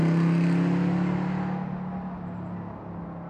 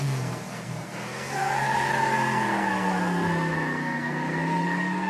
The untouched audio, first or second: first